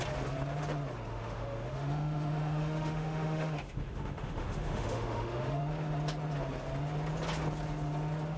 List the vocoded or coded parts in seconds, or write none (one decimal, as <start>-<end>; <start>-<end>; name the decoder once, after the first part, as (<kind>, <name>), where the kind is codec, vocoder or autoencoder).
1.1-5.6 (autoencoder, DAC-VAE)